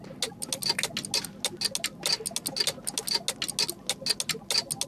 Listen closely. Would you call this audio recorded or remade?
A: recorded